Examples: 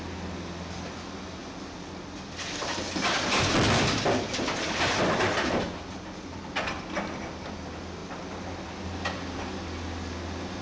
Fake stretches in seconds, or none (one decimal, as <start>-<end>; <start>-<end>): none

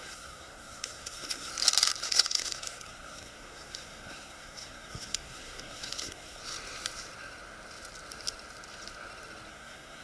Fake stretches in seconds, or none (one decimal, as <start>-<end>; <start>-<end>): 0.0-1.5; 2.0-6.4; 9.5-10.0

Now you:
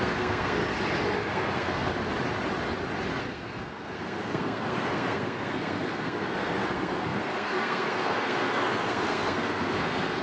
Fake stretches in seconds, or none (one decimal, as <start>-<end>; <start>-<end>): 0.0-0.6; 1.3-1.9; 3.2-10.2